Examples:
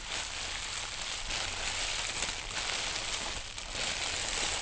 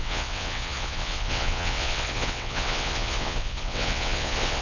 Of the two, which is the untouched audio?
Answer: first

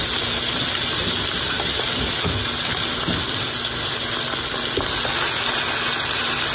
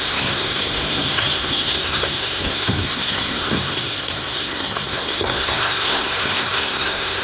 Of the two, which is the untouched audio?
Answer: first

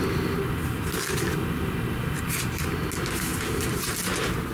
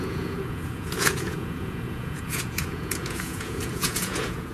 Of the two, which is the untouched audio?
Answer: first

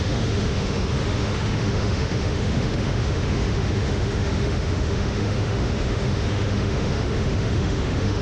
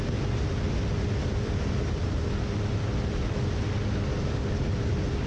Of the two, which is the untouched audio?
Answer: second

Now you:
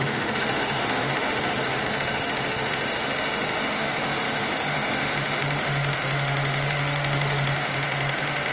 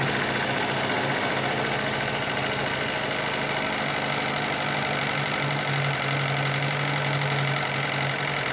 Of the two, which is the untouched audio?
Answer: second